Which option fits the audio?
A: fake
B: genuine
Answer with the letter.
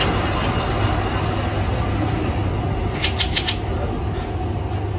B